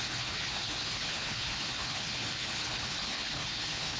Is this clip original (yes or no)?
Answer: no